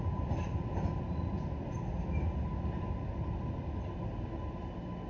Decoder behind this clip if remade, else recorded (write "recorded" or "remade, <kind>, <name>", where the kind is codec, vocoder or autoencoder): recorded